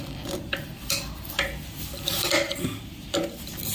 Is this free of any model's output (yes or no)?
no